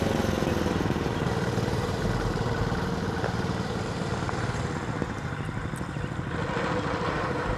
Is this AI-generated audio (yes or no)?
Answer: no